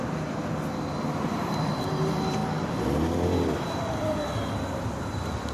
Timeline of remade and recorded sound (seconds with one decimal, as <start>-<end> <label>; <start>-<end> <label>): 0.0-2.4 remade; 2.4-3.7 recorded; 3.7-5.5 remade